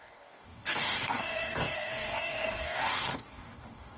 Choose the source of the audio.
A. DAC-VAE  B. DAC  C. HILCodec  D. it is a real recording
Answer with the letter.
B